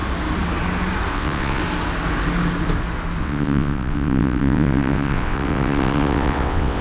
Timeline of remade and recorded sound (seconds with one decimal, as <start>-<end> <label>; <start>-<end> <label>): 0.0-1.1 recorded; 1.1-1.6 remade; 1.6-3.2 recorded; 3.2-6.8 remade